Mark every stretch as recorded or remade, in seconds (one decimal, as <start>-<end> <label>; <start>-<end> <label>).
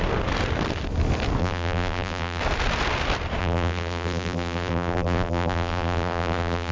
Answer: 0.0-1.4 recorded; 1.4-2.4 remade; 2.4-3.4 recorded; 3.4-6.7 remade